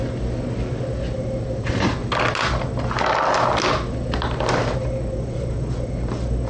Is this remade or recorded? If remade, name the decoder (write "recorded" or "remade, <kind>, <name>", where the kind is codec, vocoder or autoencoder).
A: recorded